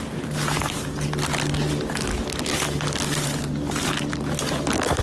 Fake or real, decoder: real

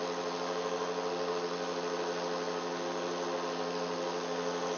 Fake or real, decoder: real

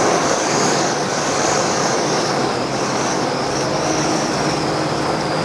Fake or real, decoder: fake, codec, DAC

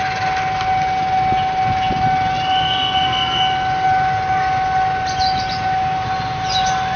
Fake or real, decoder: real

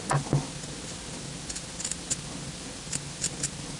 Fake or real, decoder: real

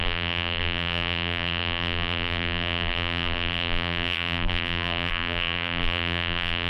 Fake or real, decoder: fake, vocoder, BigVGAN v2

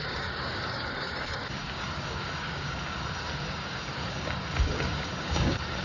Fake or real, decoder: fake, codec, DAC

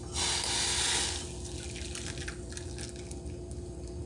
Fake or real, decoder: real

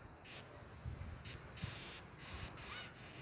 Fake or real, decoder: real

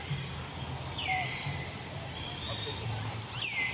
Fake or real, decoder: real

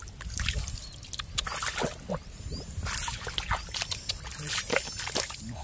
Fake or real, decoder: real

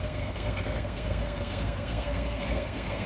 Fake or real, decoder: fake, codec, SNAC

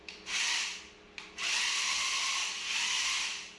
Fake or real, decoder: real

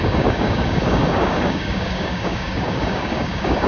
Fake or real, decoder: fake, codec, DAC